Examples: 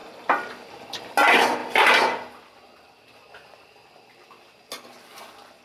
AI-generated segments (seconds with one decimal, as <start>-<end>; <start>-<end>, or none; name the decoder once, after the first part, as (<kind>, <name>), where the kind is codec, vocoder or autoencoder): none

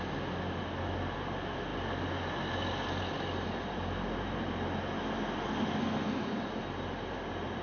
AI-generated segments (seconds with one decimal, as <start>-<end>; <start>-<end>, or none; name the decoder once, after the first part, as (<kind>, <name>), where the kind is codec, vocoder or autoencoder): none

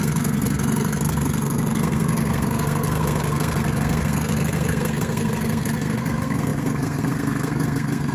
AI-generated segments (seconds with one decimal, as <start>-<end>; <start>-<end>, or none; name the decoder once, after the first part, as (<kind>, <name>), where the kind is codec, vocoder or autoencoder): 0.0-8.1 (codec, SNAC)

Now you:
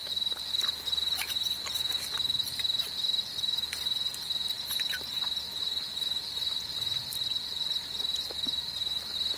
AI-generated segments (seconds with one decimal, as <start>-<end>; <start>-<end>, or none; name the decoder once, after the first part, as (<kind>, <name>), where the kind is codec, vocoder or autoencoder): none